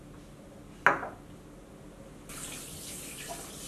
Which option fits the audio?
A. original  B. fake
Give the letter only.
A